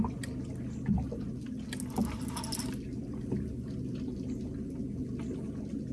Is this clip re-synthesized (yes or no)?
no